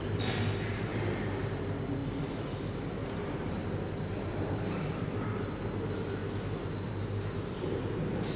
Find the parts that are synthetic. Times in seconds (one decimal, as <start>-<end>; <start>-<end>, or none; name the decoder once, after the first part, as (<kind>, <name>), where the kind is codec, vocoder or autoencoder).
0.9-1.6 (vocoder, BigVGAN v2); 3.0-3.6